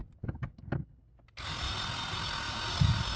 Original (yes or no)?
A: yes